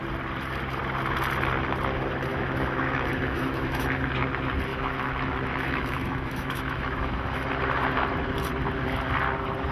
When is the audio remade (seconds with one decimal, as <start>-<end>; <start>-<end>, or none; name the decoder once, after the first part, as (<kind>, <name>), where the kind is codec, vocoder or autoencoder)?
2.3-4.1 (autoencoder, DAC-VAE); 4.7-7.5